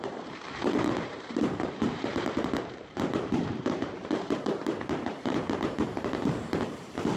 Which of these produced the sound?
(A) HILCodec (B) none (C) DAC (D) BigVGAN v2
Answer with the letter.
D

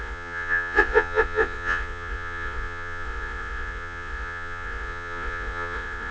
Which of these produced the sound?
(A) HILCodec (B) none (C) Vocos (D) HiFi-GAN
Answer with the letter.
C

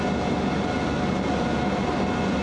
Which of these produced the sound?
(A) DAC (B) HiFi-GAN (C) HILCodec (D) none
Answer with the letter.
D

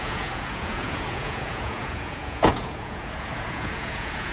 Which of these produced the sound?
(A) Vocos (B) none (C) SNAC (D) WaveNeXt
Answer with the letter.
A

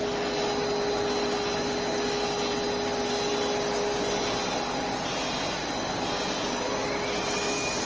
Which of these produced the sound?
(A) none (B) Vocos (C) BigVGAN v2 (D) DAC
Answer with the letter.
A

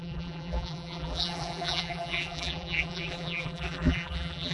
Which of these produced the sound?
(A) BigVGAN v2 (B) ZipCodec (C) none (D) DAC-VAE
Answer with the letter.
A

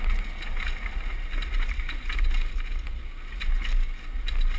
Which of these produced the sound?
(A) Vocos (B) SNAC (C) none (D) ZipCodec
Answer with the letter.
C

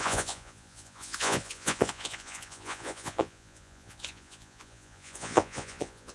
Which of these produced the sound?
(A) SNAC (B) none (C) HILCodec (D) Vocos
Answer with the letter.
D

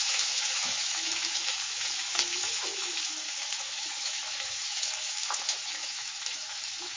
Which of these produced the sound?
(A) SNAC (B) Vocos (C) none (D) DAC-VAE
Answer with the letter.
D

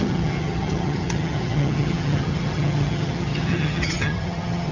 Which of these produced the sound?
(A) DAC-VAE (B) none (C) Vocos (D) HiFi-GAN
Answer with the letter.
D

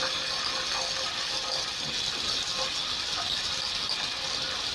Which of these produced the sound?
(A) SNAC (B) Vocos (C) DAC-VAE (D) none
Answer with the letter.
D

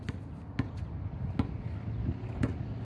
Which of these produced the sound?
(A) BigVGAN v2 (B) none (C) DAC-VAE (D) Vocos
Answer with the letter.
B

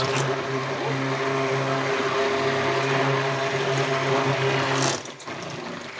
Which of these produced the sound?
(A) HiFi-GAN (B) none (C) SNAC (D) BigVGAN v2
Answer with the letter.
B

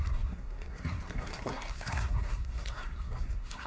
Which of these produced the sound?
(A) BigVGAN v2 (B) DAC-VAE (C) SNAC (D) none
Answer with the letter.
C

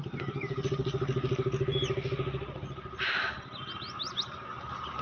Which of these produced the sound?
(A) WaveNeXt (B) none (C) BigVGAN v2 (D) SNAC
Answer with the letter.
B